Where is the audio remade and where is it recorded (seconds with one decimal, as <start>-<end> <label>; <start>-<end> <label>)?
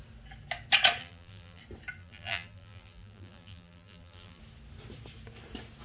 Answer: 0.0-1.0 recorded; 1.0-1.6 remade; 1.6-2.0 recorded; 2.0-4.4 remade; 4.4-5.8 recorded